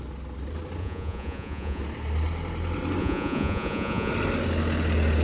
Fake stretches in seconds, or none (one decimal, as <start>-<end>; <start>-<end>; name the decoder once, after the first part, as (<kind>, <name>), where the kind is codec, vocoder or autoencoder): 0.8-1.8 (vocoder, Vocos); 3.0-4.1

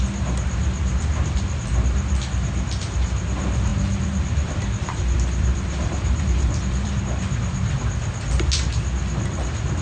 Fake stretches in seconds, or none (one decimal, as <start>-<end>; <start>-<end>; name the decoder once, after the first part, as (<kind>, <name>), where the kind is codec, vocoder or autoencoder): 3.7-7.0 (vocoder, BigVGAN v2)

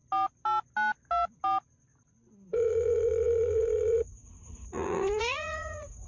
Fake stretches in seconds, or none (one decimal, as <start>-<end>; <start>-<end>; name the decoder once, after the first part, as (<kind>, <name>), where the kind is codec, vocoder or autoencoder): 2.5-6.1 (vocoder, Vocos)

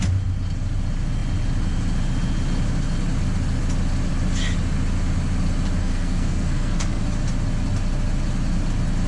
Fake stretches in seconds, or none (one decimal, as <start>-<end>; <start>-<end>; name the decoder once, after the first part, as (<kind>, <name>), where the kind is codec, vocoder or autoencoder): 5.8-7.0 (codec, SNAC)